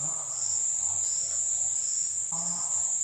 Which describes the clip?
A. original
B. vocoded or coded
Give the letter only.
A